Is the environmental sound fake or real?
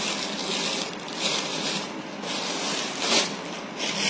real